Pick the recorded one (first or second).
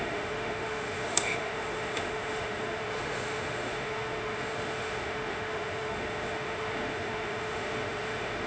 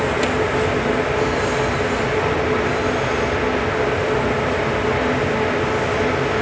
second